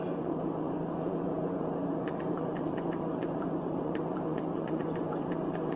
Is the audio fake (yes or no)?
yes